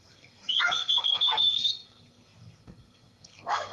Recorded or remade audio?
remade